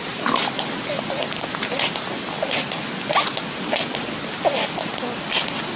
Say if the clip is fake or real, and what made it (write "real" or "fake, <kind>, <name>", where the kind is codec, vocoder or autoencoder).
real